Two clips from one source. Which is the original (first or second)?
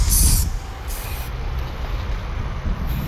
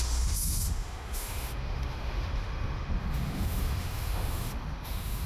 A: first